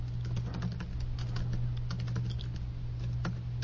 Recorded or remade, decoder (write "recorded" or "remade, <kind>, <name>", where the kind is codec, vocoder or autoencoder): recorded